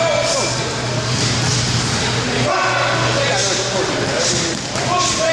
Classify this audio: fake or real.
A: real